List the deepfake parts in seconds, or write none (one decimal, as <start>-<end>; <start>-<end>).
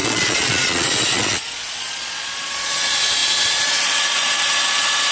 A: 0.0-5.1